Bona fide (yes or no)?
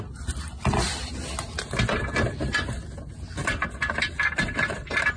yes